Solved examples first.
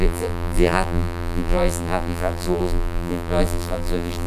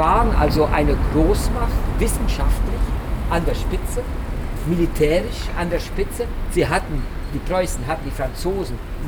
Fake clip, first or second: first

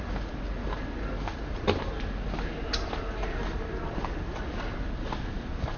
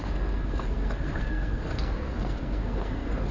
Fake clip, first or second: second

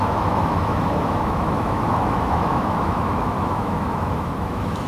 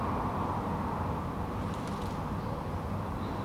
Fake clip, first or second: first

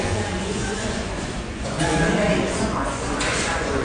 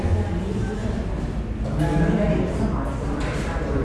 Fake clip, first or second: first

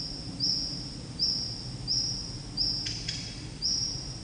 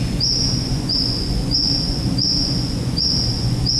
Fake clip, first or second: second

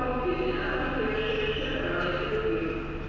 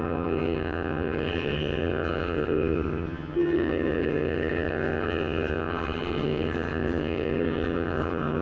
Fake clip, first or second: second